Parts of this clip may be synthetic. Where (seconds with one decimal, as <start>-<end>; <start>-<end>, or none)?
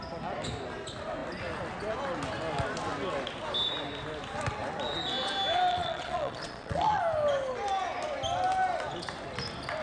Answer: 5.7-7.0